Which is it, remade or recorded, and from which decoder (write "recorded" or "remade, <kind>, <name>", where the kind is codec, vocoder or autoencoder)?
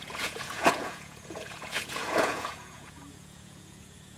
remade, vocoder, Vocos